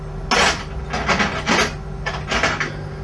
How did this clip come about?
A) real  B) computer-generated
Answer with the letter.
A